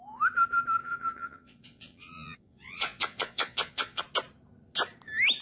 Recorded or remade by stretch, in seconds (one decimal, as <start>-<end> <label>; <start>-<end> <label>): 0.0-0.8 recorded; 0.8-4.0 remade; 4.0-5.4 recorded